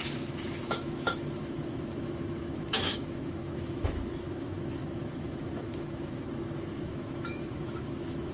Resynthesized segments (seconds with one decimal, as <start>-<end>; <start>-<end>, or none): 0.0-8.3